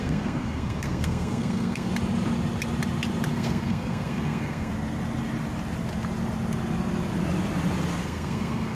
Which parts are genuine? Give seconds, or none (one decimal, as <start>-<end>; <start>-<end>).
1.9-3.3; 4.7-8.0